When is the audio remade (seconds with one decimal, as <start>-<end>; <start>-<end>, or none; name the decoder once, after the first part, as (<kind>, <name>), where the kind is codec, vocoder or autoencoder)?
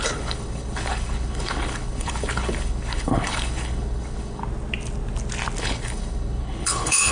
0.0-4.4 (codec, HILCodec); 5.6-7.1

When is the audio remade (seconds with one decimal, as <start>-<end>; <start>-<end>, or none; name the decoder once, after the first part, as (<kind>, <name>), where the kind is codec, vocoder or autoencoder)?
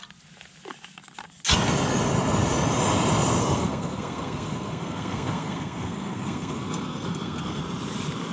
3.4-7.6 (codec, SNAC)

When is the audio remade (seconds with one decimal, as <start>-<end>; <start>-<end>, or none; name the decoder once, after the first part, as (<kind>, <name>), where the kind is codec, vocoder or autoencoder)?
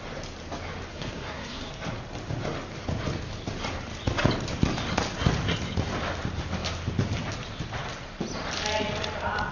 0.9-1.7 (codec, SNAC)